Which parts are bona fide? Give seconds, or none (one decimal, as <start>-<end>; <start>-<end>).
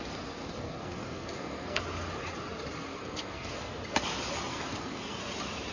0.0-0.4; 1.8-2.9; 3.7-4.5; 5.2-5.7